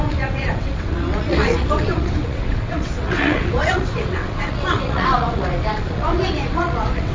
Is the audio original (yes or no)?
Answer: no